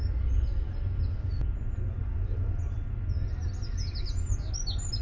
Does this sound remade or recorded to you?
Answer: recorded